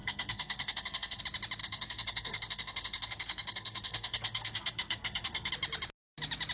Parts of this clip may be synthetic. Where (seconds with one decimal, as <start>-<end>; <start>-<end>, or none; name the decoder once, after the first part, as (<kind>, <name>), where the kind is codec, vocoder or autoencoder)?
0.0-1.2 (codec, SNAC); 1.6-5.5